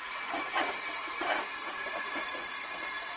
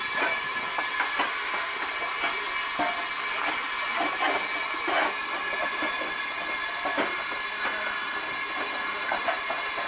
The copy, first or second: first